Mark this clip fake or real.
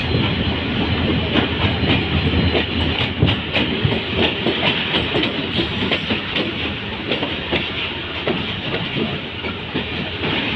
real